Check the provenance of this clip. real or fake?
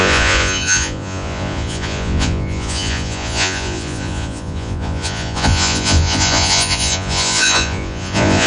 fake